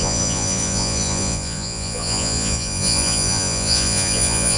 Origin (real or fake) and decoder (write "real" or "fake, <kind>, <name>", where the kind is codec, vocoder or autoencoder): fake, vocoder, Vocos